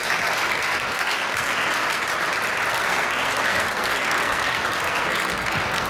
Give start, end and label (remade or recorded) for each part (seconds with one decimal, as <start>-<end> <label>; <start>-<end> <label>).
0.0-2.1 remade; 2.1-2.7 recorded; 2.7-5.9 remade